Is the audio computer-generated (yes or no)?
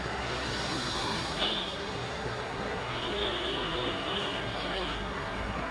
yes